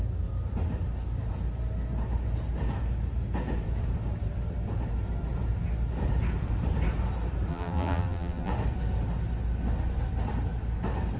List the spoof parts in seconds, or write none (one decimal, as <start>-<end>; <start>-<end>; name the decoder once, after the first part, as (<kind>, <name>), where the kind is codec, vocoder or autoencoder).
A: 7.5-8.5 (vocoder, BigVGAN v2)